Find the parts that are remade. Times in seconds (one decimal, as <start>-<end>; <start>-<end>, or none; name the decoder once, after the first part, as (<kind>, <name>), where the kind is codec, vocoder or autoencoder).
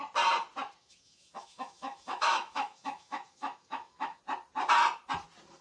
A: 0.8-4.2 (autoencoder, DAC-VAE)